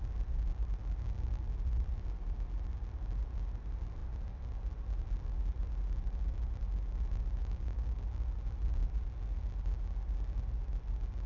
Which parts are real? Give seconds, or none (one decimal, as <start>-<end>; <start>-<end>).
0.0-7.4; 8.0-11.3